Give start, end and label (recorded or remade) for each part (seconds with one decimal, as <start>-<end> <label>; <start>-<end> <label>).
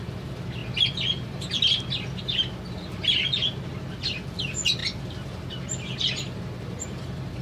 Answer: 0.0-7.4 recorded